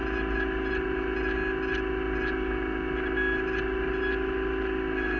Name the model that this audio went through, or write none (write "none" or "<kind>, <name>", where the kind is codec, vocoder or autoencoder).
none